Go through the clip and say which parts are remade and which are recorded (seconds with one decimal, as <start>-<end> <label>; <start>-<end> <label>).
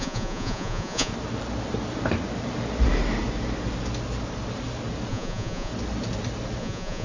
0.0-1.1 remade; 1.1-5.1 recorded; 5.1-5.7 remade; 5.7-6.6 recorded; 6.6-7.0 remade